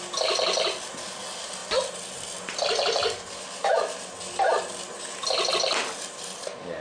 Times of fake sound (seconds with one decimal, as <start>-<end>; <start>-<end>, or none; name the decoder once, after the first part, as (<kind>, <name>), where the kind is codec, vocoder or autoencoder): none